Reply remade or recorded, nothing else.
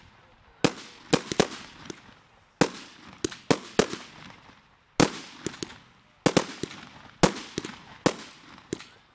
recorded